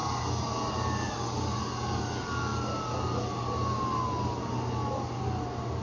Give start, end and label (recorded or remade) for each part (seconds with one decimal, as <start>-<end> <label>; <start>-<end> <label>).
0.0-5.8 recorded